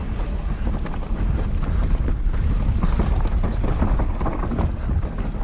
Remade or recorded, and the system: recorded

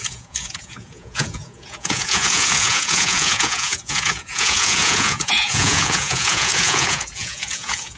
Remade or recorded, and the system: remade, vocoder, Vocos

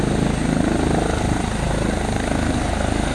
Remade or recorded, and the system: recorded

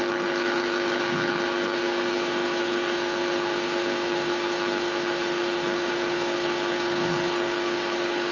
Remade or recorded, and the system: remade, codec, HILCodec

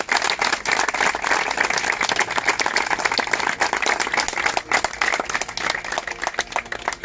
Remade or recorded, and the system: recorded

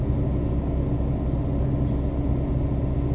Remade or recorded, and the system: recorded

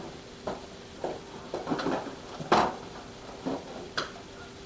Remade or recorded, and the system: recorded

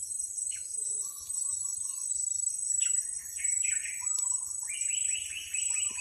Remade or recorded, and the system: recorded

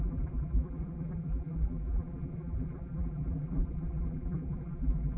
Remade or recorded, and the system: remade, vocoder, BigVGAN v2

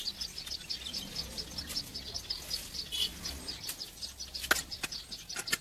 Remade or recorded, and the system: recorded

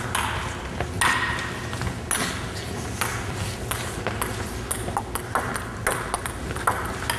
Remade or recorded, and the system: recorded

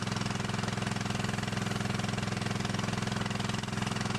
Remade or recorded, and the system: recorded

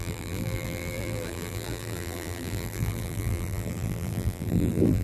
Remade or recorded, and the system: remade, vocoder, BigVGAN v2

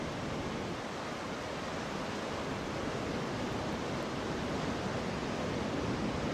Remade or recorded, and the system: recorded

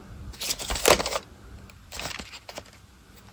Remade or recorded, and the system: recorded